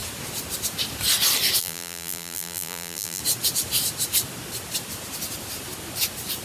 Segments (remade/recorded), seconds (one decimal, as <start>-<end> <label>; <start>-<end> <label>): 0.0-1.6 recorded; 1.6-3.2 remade; 3.2-6.4 recorded